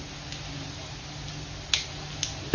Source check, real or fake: real